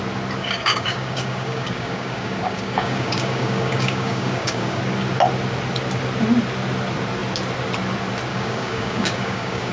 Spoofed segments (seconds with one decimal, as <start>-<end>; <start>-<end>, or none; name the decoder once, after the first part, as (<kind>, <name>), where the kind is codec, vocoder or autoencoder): 0.4-4.8 (codec, DAC); 8.3-9.7